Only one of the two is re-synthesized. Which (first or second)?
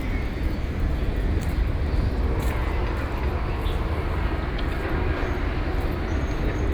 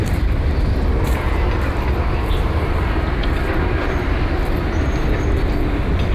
second